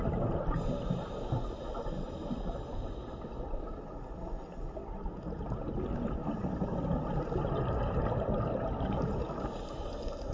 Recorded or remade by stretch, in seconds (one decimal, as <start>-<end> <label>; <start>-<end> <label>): 0.0-10.3 recorded